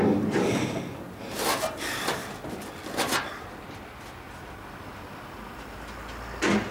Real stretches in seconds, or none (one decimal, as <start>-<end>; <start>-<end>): 0.0-2.2; 4.1-6.7